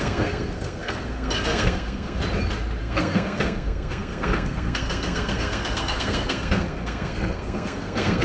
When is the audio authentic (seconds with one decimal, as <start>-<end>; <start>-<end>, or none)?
2.2-2.8